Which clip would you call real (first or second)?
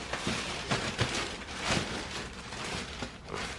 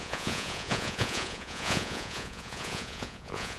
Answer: first